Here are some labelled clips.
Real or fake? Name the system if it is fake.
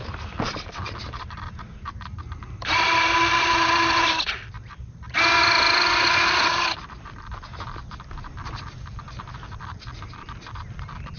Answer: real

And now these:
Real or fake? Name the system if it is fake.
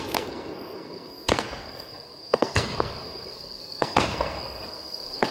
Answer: fake, codec, SNAC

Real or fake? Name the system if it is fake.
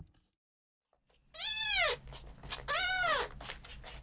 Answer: real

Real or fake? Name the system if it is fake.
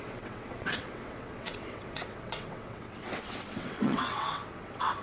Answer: fake, vocoder, WaveNeXt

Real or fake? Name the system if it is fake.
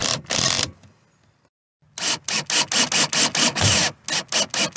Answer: real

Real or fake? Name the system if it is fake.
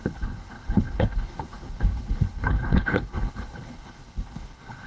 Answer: fake, codec, HILCodec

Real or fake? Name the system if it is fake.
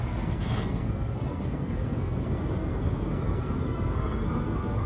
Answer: fake, codec, SNAC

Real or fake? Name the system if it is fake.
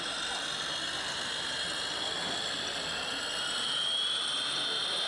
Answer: real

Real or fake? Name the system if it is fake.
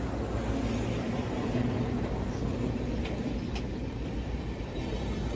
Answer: real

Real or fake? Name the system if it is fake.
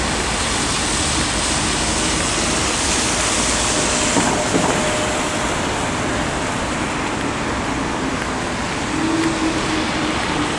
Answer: real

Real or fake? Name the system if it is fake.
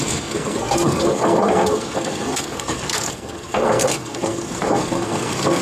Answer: fake, codec, SNAC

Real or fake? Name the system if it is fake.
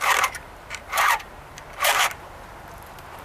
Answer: fake, vocoder, BigVGAN v2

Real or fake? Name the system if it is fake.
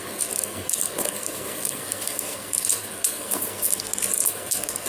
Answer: fake, codec, SNAC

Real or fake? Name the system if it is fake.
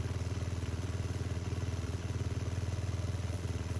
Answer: fake, vocoder, Vocos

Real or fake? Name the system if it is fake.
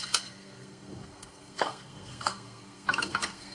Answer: fake, codec, SNAC